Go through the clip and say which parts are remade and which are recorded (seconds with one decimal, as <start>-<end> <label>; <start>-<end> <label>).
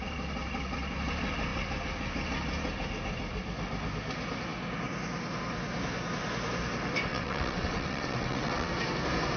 0.0-7.1 recorded; 7.1-8.7 remade; 8.7-9.4 recorded